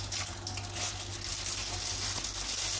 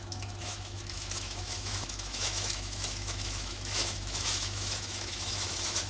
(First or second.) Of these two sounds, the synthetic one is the second